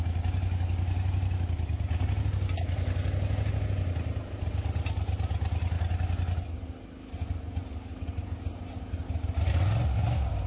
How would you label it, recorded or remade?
recorded